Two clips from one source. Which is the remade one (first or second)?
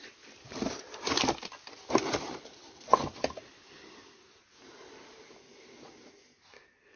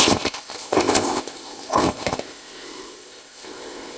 second